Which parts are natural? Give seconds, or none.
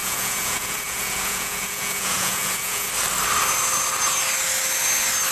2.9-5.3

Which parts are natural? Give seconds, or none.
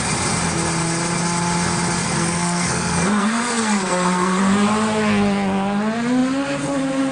0.0-2.0; 4.4-7.1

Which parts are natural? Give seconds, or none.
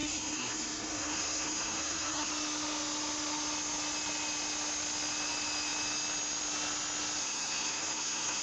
2.3-7.2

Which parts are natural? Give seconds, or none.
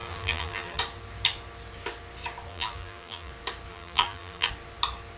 0.8-2.5; 3.3-3.7; 4.5-5.2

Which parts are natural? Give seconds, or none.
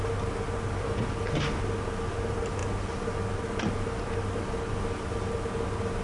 0.0-6.0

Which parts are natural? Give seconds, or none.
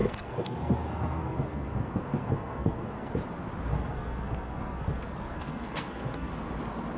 3.1-3.7; 6.3-7.0